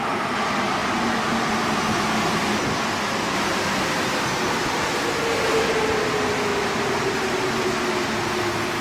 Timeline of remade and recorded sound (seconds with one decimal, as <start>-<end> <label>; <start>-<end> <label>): 0.0-8.8 recorded